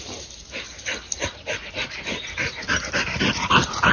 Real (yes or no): yes